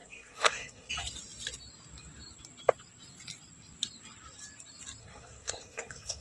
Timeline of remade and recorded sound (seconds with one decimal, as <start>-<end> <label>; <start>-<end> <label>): 0.0-0.9 remade; 0.9-5.0 recorded; 5.0-6.2 remade